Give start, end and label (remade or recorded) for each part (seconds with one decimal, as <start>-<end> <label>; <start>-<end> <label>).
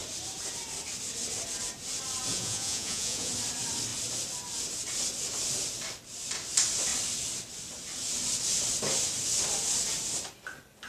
0.0-2.3 recorded; 2.3-3.3 remade; 3.3-10.9 recorded